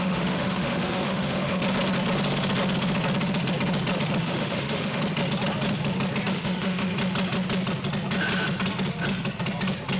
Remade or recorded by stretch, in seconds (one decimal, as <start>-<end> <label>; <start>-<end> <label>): 0.0-1.6 remade; 1.6-4.2 recorded; 4.2-5.0 remade; 5.0-6.3 recorded; 6.3-6.9 remade; 6.9-10.0 recorded